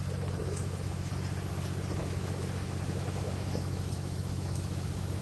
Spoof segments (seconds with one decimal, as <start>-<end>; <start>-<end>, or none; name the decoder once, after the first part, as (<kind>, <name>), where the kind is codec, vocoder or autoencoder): 0.4-1.1 (autoencoder, DAC-VAE); 2.0-5.2